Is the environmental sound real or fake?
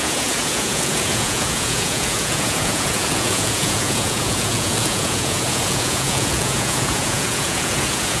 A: fake